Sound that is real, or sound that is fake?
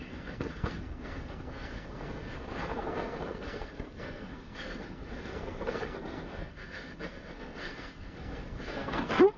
fake